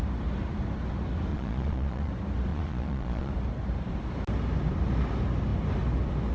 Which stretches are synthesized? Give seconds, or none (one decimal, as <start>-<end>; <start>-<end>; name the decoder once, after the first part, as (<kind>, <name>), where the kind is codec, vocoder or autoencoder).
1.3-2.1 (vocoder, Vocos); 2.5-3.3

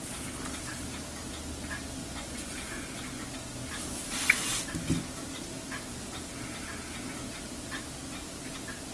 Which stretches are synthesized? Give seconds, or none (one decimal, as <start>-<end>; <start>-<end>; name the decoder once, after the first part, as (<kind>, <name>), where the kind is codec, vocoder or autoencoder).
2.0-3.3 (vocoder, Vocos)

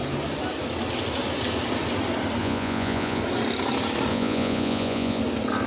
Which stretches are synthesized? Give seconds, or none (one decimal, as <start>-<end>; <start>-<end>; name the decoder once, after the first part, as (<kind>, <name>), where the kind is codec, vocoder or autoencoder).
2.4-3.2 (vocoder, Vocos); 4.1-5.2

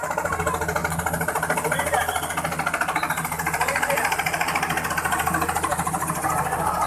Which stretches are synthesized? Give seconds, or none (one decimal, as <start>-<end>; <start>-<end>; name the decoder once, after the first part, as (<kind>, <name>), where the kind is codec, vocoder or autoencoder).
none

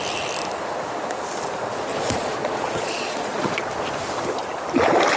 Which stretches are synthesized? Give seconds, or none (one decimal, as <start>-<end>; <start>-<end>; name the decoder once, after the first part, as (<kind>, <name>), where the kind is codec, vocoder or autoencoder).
1.9-3.7 (vocoder, Vocos)

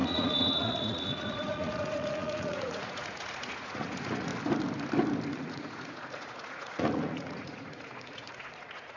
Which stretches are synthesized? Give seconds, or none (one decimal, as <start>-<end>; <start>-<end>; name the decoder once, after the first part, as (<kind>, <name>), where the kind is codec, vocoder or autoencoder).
0.0-4.3 (vocoder, Vocos); 5.4-9.0

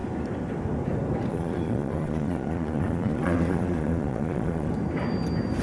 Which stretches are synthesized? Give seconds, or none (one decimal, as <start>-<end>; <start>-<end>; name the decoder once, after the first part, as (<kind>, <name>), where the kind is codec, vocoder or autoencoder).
1.3-4.7 (vocoder, Vocos)

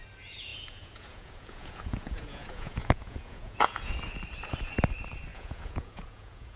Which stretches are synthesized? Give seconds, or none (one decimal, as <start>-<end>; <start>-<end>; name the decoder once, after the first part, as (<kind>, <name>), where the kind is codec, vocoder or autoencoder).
0.5-4.0 (vocoder, Vocos); 5.3-6.6